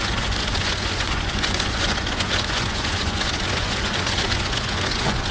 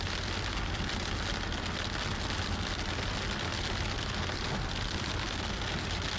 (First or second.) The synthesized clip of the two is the first